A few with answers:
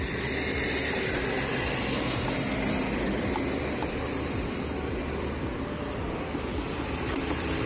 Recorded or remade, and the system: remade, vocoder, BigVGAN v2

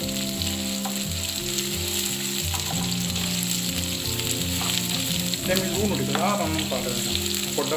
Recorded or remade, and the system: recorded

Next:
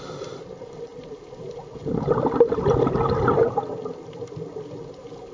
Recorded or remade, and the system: recorded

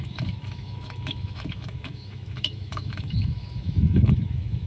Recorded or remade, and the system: remade, autoencoder, DAC-VAE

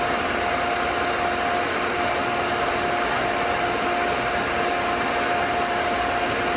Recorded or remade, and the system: recorded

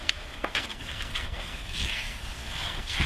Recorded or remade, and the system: remade, codec, SNAC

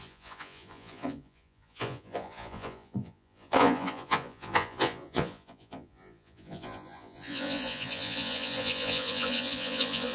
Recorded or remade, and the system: remade, vocoder, Vocos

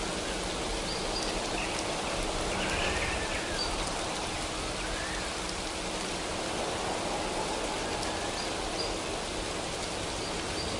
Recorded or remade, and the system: recorded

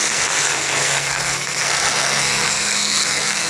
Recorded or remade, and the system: remade, codec, SNAC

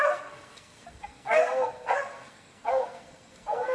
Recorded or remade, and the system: remade, codec, SNAC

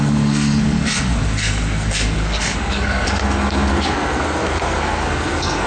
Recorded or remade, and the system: remade, codec, SNAC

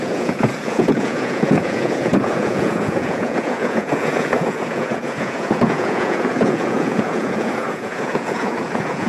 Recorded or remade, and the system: remade, vocoder, Vocos